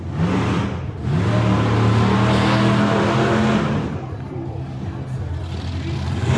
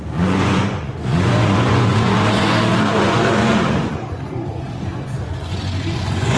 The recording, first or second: first